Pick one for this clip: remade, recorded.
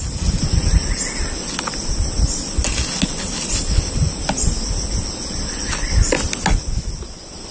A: recorded